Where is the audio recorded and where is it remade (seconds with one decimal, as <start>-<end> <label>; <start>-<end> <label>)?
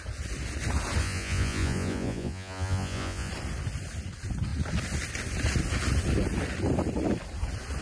0.0-1.0 recorded; 1.0-3.3 remade; 3.3-7.8 recorded